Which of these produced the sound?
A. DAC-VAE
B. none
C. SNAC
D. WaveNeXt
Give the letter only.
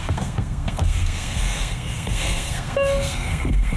C